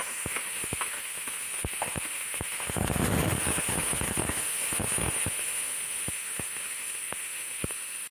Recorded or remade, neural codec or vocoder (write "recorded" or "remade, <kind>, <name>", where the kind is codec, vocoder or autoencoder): remade, autoencoder, DAC-VAE